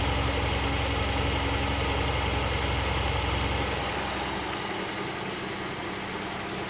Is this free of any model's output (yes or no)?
yes